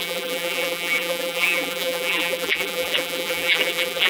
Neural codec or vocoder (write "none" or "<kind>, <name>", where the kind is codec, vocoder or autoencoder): vocoder, BigVGAN v2